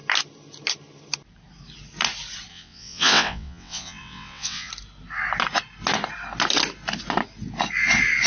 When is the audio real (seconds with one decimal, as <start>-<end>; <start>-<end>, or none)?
0.0-2.5; 4.7-8.3